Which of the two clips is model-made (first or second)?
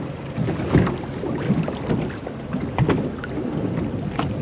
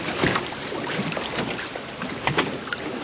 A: second